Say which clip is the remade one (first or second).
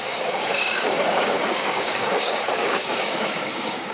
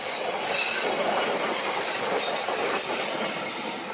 first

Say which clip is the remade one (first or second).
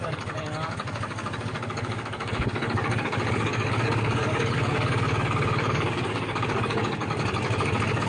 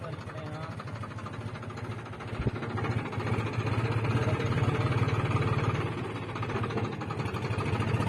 first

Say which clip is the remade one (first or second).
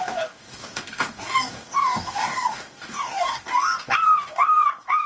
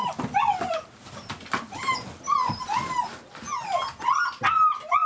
first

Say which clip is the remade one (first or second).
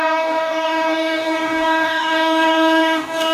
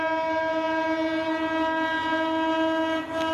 first